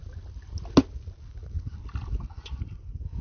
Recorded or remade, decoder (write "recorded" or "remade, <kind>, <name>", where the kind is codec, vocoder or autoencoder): recorded